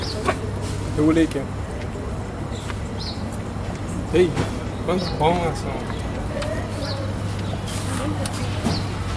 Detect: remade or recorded recorded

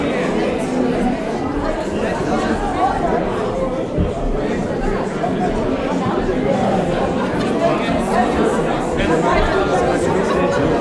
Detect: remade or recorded recorded